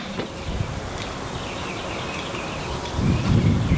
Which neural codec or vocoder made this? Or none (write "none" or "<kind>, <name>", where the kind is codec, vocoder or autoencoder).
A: none